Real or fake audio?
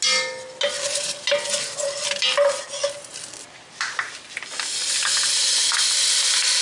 real